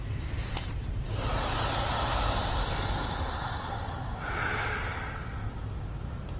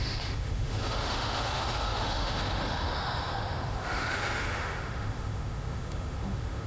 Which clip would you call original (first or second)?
first